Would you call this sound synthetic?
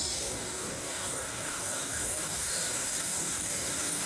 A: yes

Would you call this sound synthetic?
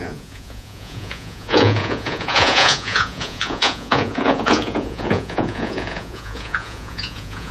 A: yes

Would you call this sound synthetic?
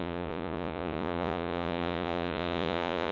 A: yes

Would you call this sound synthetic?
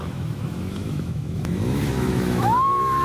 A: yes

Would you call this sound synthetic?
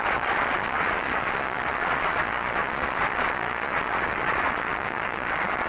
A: yes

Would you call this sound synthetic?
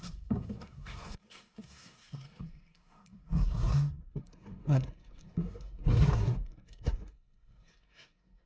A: yes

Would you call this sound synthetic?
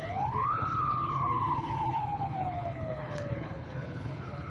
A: yes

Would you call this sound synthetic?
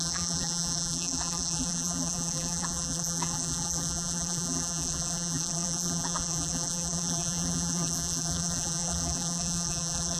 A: yes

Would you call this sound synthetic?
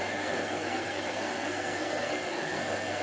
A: yes